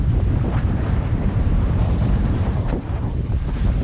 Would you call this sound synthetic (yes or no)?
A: yes